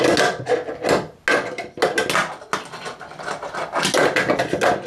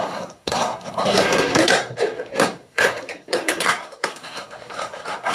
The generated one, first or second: second